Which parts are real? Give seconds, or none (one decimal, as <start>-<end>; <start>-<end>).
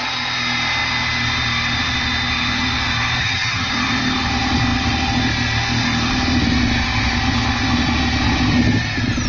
0.0-3.2; 3.7-9.3